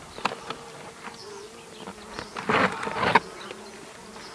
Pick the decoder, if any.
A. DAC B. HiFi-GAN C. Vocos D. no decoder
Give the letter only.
D